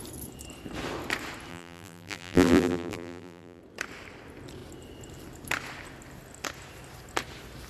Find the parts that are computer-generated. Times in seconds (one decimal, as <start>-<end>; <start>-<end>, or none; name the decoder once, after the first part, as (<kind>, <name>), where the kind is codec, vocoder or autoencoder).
1.5-3.6 (vocoder, BigVGAN v2)